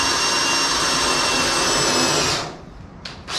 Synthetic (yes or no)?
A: no